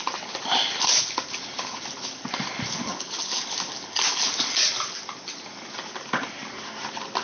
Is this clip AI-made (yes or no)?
no